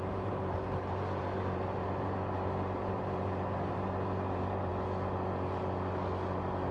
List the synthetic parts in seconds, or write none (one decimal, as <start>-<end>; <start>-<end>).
0.0-4.7